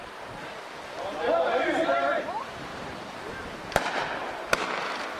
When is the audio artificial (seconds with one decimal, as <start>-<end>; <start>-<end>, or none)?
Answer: 0.0-2.7; 3.5-5.2